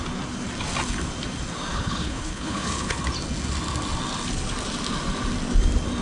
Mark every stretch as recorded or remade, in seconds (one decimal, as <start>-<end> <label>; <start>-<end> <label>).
0.0-1.7 recorded; 1.7-3.0 remade; 3.0-6.0 recorded